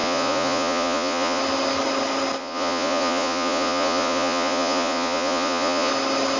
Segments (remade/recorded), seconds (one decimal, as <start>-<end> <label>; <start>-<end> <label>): 0.0-1.4 remade; 1.4-2.4 recorded; 2.4-5.9 remade; 5.9-6.4 recorded